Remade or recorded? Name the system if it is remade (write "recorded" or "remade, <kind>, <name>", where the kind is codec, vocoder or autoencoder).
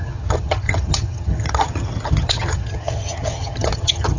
remade, vocoder, HiFi-GAN